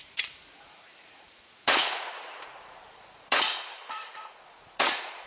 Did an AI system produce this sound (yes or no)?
yes